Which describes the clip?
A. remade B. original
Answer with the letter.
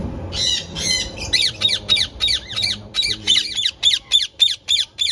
A